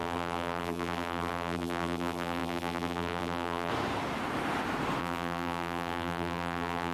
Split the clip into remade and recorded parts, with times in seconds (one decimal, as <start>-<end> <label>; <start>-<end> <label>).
0.0-3.7 remade; 3.7-5.0 recorded; 5.0-6.9 remade